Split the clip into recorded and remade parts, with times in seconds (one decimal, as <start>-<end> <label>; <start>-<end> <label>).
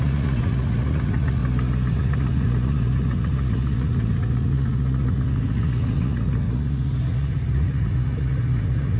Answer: 0.0-1.4 remade; 1.4-1.9 recorded; 1.9-9.0 remade